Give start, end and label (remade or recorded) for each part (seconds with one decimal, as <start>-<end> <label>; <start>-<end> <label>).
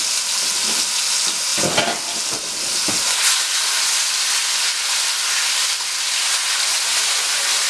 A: 0.0-7.7 recorded